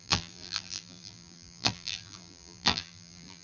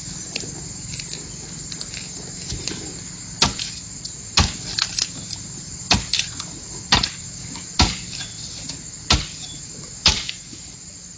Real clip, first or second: second